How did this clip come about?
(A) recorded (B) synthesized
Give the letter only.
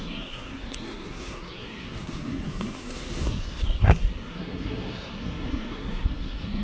B